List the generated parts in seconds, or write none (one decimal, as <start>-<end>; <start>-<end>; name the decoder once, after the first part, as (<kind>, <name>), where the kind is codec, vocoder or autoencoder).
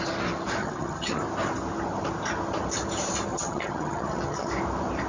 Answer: 0.6-1.2 (vocoder, HiFi-GAN); 3.3-4.5